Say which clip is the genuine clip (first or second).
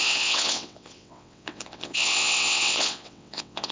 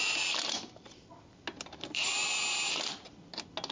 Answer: second